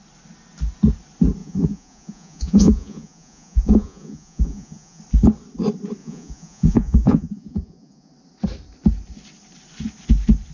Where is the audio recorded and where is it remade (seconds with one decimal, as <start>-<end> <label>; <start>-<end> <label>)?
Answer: 0.0-1.4 recorded; 1.4-5.0 remade; 5.0-6.0 recorded; 6.0-8.1 remade; 8.1-10.5 recorded